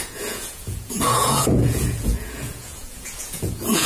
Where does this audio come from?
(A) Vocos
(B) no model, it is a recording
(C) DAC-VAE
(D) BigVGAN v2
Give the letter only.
A